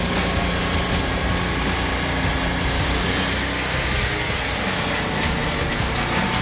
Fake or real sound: real